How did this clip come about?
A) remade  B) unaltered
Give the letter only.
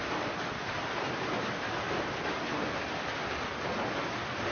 B